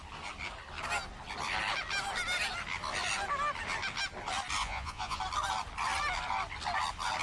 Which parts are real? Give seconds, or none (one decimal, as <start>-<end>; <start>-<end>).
0.0-4.6; 5.2-7.2